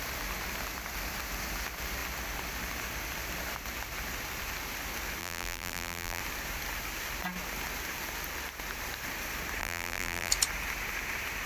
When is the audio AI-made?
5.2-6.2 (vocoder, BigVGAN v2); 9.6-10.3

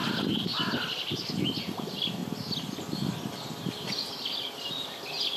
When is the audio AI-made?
0.0-0.5 (vocoder, BigVGAN v2); 1.1-2.2